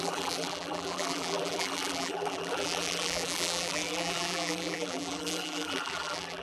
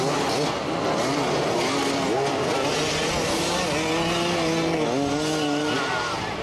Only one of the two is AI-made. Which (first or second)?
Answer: first